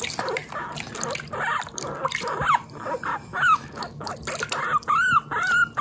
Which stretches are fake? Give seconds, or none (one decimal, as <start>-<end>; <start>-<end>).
3.3-4.1